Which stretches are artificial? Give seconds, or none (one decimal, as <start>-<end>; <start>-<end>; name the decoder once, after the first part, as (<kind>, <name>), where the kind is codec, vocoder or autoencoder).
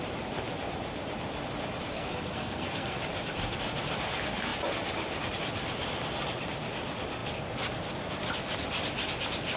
1.9-3.0 (codec, SNAC)